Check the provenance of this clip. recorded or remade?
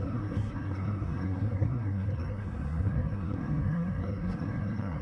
remade